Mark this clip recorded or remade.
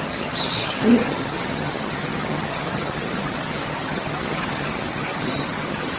remade